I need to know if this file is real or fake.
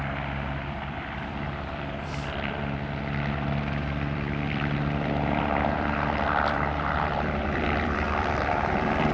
fake